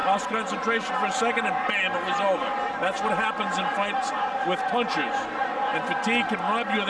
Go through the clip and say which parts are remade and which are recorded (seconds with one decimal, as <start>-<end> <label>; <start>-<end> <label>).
0.0-6.9 recorded